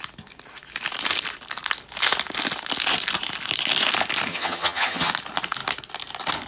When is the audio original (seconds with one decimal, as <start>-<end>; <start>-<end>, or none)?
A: 0.0-4.3; 5.1-6.5